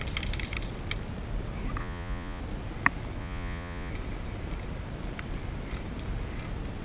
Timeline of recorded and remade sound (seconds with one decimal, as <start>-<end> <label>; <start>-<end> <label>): 0.0-1.8 recorded; 1.8-2.4 remade; 2.4-3.2 recorded; 3.2-3.9 remade; 3.9-6.8 recorded